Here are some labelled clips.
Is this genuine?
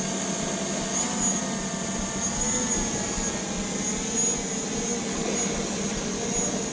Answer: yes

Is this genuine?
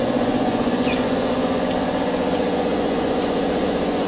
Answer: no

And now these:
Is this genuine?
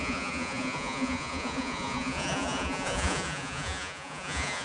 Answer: no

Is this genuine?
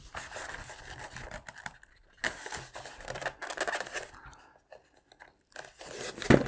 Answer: yes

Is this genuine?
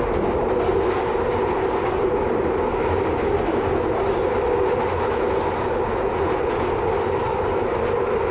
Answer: yes